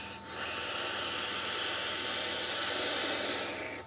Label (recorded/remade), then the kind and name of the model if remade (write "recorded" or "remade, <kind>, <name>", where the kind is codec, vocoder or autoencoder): recorded